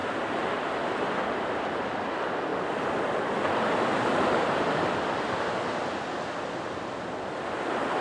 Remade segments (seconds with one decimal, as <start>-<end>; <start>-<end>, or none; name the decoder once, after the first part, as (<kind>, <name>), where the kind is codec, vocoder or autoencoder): none